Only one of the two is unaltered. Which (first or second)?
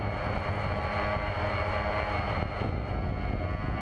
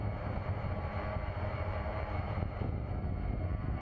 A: first